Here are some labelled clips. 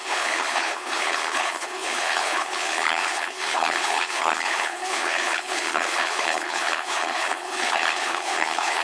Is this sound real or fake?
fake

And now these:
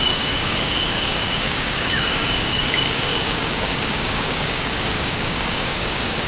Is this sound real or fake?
fake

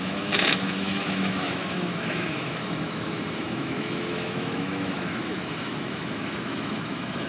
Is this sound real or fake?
fake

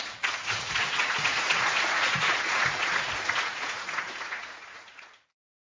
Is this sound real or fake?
fake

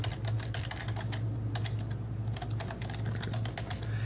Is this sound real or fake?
real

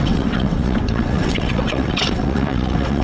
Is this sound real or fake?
fake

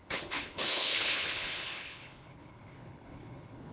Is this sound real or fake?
fake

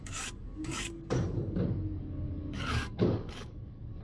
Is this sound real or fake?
fake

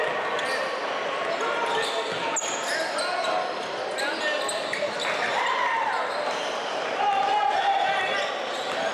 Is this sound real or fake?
real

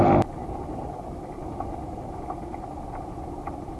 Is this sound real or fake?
real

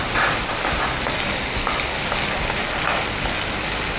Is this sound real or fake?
real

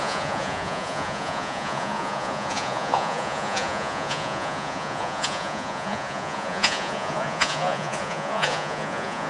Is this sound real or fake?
fake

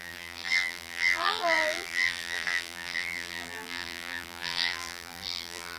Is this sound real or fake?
fake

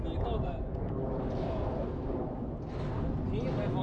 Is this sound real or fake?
real